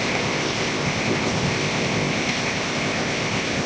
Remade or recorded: remade